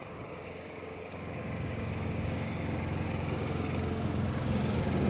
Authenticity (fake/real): fake